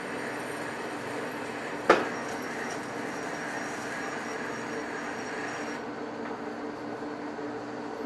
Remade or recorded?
recorded